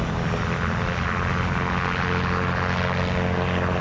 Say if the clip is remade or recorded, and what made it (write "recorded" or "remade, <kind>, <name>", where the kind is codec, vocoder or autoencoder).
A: recorded